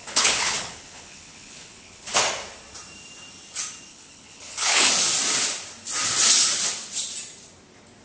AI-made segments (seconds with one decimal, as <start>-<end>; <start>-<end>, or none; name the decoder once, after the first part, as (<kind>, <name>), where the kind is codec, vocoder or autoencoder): 0.0-2.2 (codec, HILCodec); 3.9-4.9